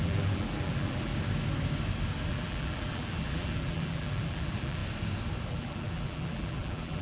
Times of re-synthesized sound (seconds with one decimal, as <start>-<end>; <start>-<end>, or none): 0.0-1.1; 2.3-4.8; 5.5-7.0